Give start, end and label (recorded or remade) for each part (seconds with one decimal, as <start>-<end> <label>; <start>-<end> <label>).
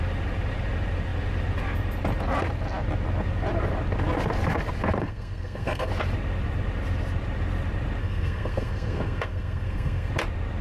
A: 0.0-5.0 recorded; 5.0-5.9 remade; 5.9-8.0 recorded; 8.0-10.1 remade; 10.1-10.6 recorded